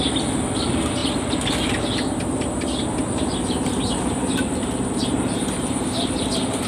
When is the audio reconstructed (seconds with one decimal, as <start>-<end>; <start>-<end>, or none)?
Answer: 0.0-6.7